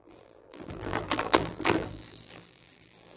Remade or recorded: remade